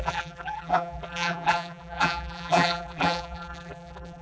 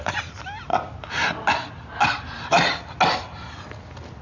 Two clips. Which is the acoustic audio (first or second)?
second